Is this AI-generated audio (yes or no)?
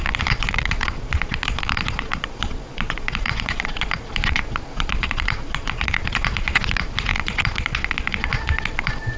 yes